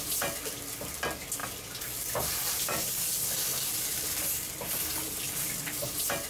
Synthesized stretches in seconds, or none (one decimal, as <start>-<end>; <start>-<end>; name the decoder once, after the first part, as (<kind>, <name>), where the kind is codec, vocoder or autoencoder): none